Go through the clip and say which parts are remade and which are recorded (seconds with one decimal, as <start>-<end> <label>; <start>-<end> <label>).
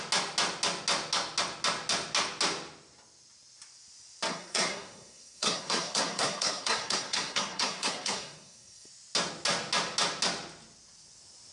0.0-4.3 recorded; 4.3-8.9 remade; 8.9-11.5 recorded